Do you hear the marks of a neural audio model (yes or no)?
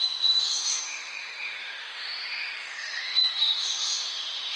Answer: yes